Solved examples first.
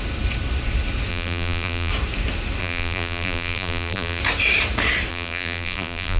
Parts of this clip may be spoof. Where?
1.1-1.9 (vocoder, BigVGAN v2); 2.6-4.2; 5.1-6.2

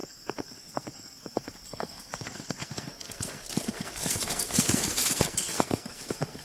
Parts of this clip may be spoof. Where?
0.0-6.4 (codec, SNAC)

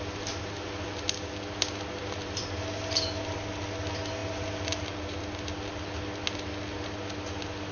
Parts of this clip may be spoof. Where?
none

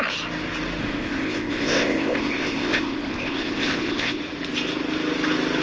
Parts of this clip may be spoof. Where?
0.8-4.2 (codec, ZipCodec)